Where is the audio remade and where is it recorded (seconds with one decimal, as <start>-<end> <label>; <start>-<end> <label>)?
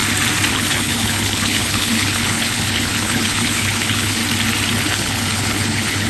0.0-0.5 recorded; 0.5-4.2 remade; 4.2-4.8 recorded; 4.8-6.1 remade